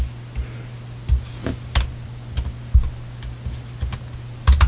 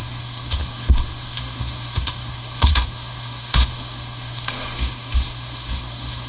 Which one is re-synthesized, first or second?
second